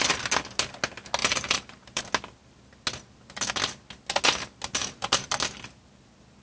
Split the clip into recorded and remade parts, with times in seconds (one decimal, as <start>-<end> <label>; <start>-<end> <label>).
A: 0.0-1.2 recorded; 1.2-2.0 remade; 2.0-4.8 recorded; 4.8-5.3 remade; 5.3-6.4 recorded